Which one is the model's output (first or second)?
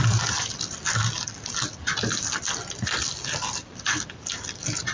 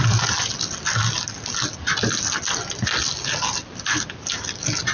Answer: first